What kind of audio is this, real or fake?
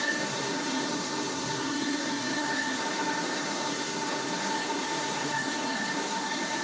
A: fake